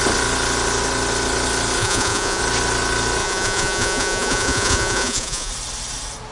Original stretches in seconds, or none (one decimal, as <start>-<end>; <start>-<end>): 0.0-1.8; 2.4-3.2; 5.5-6.3